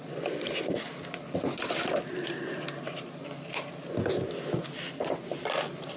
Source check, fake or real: real